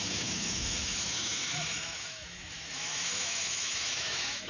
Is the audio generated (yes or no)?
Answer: yes